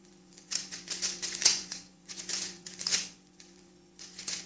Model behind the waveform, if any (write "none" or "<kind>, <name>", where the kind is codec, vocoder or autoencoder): vocoder, Vocos